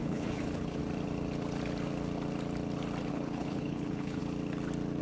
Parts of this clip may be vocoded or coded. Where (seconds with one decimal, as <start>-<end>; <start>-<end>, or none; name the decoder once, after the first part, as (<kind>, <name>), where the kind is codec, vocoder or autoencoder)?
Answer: 0.0-0.8 (codec, HILCodec); 3.1-4.2